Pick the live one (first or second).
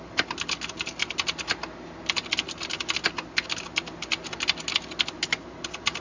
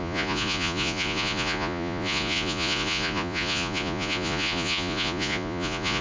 first